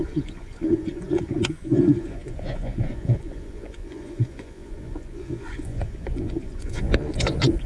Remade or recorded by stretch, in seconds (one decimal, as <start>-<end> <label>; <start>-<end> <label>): 0.0-7.7 remade